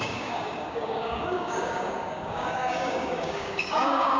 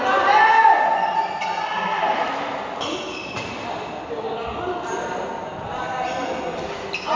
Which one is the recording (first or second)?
second